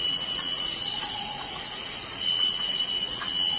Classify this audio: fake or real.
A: fake